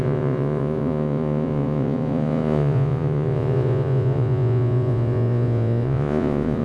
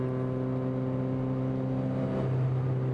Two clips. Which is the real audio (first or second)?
second